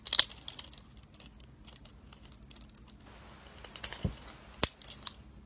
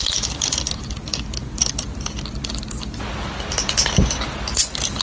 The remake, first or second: second